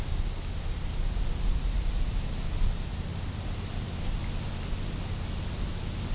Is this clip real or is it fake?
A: real